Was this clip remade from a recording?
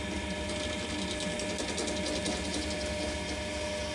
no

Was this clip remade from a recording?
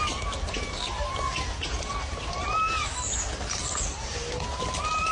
no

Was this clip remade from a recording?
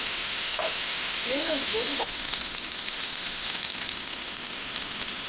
yes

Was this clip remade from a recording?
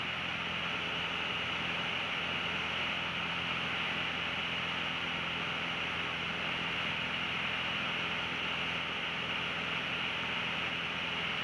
no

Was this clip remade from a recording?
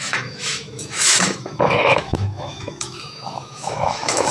yes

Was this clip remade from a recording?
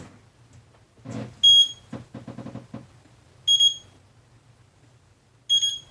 no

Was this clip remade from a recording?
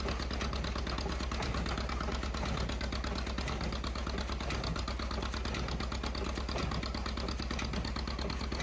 no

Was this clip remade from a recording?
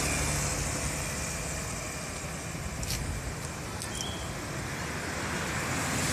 no